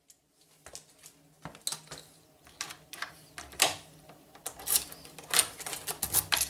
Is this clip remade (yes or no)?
no